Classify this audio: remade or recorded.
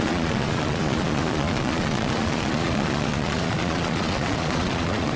remade